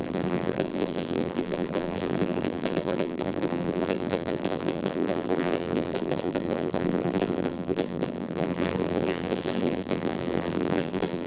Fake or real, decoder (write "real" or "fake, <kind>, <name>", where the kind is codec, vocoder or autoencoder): fake, vocoder, BigVGAN v2